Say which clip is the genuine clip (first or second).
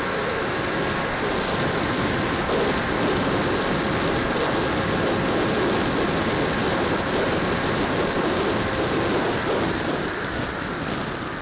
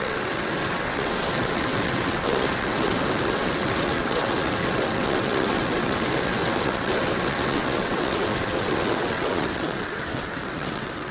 first